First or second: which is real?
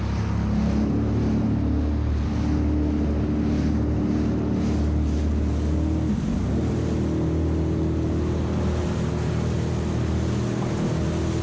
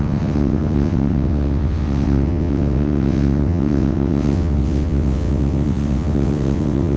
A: first